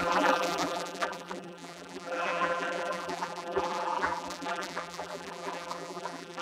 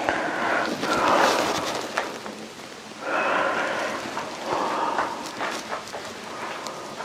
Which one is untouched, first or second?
second